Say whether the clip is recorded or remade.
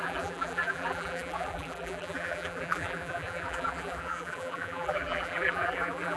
remade